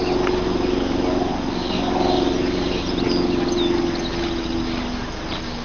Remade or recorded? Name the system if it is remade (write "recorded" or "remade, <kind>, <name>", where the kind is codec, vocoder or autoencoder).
recorded